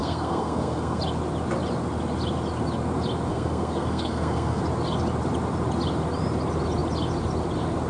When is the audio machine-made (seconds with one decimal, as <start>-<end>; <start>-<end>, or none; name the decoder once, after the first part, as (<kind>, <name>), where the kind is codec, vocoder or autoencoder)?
0.0-1.0 (codec, SNAC); 3.3-4.6